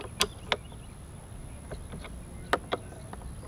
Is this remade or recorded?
recorded